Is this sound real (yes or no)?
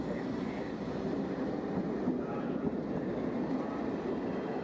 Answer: yes